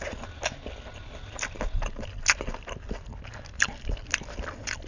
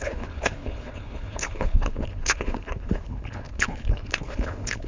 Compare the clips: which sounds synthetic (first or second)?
second